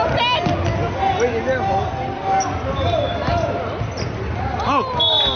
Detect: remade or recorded recorded